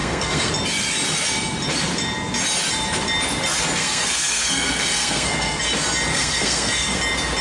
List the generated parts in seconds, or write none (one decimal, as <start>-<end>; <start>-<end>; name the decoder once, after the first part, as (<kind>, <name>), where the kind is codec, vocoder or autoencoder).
0.0-0.5 (codec, SNAC); 3.8-5.6; 6.1-7.0